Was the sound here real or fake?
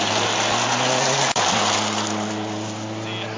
real